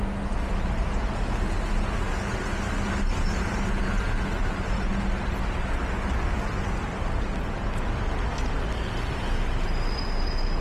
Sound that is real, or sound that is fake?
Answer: real